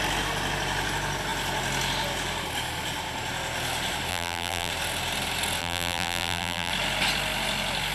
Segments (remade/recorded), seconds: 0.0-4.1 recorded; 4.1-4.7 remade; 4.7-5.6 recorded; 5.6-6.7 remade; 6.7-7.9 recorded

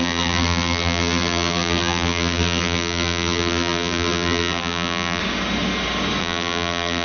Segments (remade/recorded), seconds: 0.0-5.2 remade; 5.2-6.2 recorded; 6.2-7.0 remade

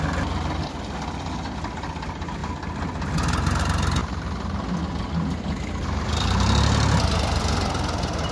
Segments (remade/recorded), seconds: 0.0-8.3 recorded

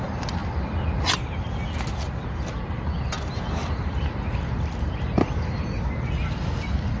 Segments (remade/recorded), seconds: 0.0-0.4 recorded; 0.4-1.2 remade; 1.2-7.0 recorded

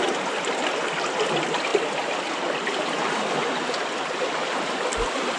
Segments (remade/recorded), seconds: 0.0-5.4 recorded